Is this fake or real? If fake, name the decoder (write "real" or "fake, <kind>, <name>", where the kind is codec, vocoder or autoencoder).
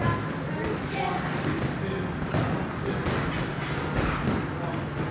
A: real